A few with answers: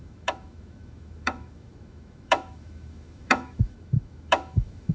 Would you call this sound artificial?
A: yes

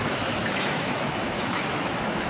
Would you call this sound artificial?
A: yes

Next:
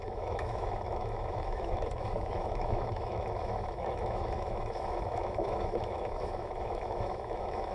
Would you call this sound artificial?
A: yes